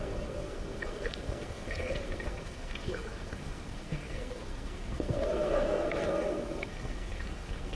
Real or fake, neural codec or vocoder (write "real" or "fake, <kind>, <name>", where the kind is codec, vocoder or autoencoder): fake, codec, SNAC